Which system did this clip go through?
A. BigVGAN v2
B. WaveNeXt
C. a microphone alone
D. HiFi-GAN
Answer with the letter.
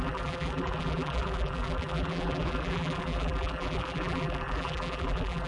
A